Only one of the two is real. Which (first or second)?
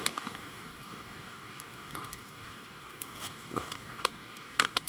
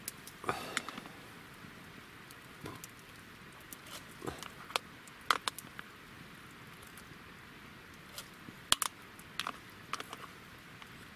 second